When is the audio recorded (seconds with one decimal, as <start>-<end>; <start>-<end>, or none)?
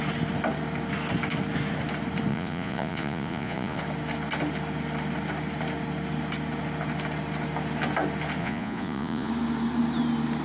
0.0-2.3; 3.8-8.4; 9.3-10.4